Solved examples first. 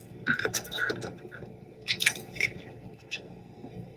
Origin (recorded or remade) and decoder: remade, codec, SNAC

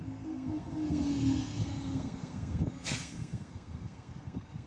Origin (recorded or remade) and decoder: remade, codec, SNAC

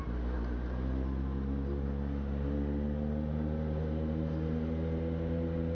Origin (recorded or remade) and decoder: recorded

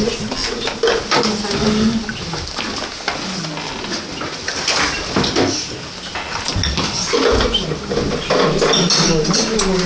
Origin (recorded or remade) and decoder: recorded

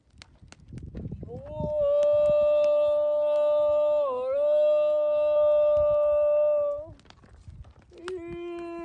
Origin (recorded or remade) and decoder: recorded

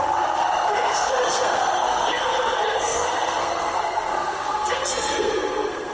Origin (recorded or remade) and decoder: remade, codec, SNAC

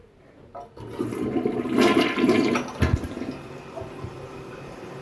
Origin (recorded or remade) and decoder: recorded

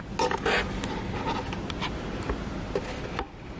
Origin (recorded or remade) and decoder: recorded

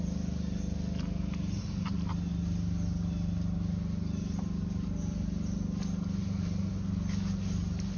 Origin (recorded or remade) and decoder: recorded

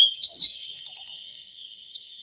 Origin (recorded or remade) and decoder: remade, codec, SNAC